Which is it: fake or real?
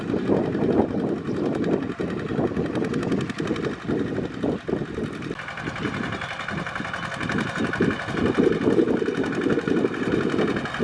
real